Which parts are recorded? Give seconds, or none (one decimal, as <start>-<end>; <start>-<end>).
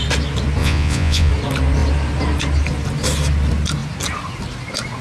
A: 0.0-0.6; 1.3-5.0